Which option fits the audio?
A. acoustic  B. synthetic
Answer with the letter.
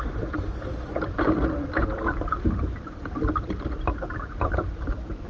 B